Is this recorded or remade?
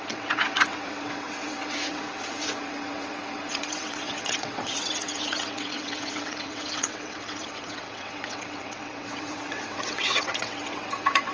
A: remade